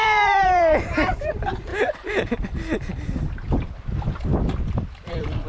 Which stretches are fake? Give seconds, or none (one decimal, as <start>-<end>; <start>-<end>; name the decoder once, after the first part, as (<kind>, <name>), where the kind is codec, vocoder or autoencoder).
0.0-5.5 (vocoder, BigVGAN v2)